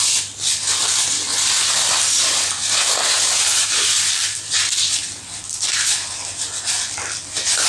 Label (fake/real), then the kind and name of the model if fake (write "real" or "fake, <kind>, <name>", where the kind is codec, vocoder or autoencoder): real